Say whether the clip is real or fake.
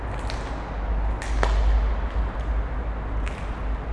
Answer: real